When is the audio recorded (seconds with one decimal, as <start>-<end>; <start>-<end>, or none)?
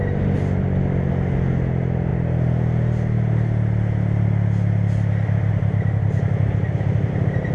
0.0-7.5